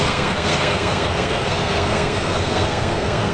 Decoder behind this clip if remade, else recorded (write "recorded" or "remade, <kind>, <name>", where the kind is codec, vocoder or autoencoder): remade, codec, SNAC